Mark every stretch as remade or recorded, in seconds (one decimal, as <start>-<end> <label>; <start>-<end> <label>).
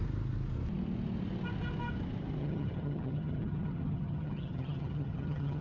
0.0-2.4 recorded; 2.4-5.6 remade